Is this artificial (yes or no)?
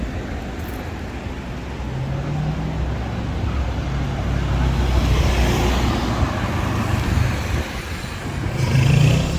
no